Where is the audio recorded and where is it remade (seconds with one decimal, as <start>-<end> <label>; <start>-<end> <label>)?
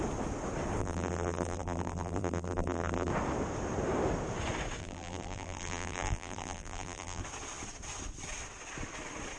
0.0-0.8 recorded; 0.8-3.1 remade; 3.1-4.8 recorded; 4.8-7.2 remade; 7.2-9.4 recorded